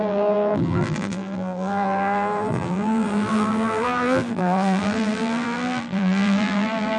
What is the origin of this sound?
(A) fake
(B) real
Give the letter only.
A